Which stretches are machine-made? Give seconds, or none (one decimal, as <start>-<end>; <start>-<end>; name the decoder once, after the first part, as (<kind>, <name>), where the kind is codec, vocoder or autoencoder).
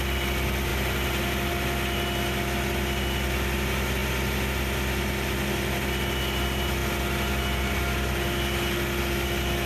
none